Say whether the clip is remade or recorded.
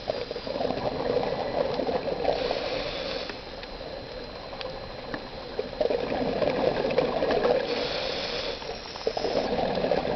recorded